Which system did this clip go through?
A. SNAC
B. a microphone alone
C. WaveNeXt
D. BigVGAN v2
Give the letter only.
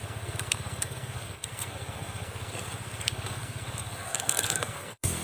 A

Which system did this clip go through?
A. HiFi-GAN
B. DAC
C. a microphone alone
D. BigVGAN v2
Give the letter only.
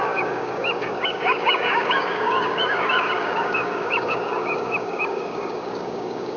B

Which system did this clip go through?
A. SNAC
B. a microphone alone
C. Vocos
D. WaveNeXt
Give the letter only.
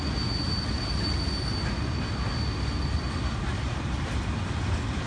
B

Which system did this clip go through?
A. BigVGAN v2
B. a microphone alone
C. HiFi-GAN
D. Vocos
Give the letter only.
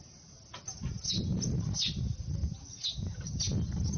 B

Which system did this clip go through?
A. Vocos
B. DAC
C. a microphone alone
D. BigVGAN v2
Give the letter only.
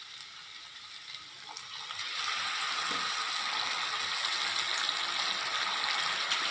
C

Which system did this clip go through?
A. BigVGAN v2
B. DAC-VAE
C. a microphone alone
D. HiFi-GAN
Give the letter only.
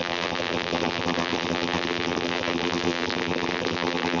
A